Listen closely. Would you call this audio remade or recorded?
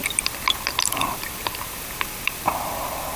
remade